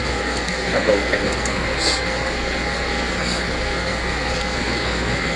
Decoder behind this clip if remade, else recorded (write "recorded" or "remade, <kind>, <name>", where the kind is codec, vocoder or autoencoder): remade, codec, SNAC